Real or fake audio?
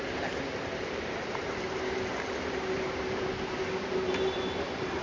real